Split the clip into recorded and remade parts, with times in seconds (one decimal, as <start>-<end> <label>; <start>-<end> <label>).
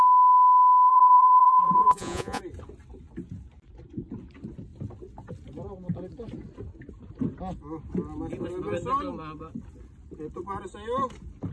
0.0-0.9 recorded; 0.9-2.4 remade; 2.4-11.5 recorded